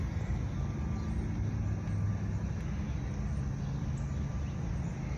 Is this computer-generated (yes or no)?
no